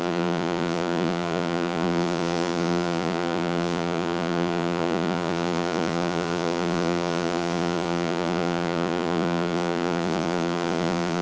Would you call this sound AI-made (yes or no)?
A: yes